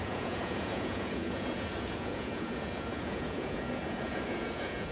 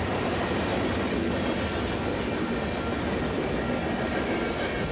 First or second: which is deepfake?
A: first